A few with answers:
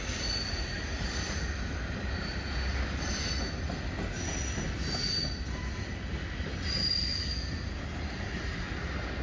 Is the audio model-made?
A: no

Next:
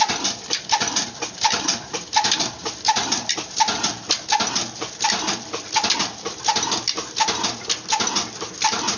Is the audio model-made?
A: yes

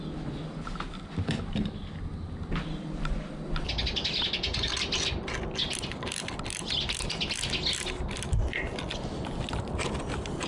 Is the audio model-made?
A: no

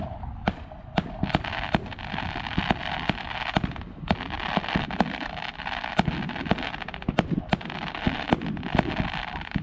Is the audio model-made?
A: no